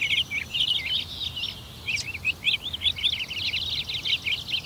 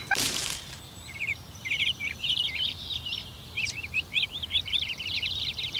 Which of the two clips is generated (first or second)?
second